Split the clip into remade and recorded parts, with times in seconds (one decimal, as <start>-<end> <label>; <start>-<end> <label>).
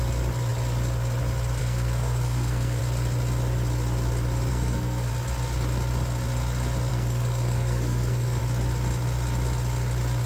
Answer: 0.0-1.6 recorded; 1.6-2.8 remade; 2.8-4.5 recorded; 4.5-5.1 remade; 5.1-6.9 recorded; 6.9-8.4 remade; 8.4-10.3 recorded